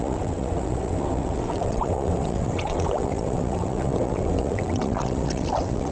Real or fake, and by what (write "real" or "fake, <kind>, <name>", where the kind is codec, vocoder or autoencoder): fake, vocoder, WaveNeXt